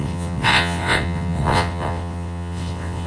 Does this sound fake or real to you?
fake